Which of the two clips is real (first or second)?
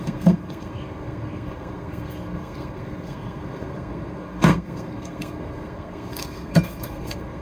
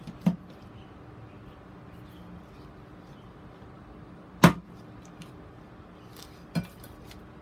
second